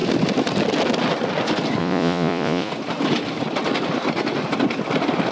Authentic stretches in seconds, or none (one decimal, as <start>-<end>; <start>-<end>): 0.0-1.8; 2.7-5.3